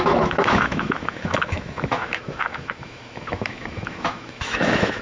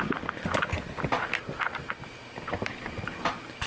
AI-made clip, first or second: first